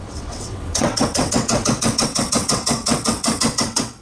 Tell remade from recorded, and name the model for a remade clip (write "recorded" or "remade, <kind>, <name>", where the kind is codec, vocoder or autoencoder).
remade, vocoder, WaveNeXt